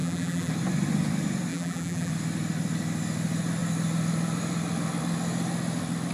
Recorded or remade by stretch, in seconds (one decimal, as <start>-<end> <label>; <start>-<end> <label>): 0.0-0.5 remade; 0.5-1.5 recorded; 1.5-2.1 remade; 2.1-6.1 recorded